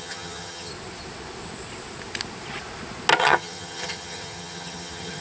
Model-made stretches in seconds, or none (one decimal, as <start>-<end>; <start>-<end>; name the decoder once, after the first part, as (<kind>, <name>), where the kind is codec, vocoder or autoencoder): 0.0-0.7 (vocoder, HiFi-GAN); 3.2-5.2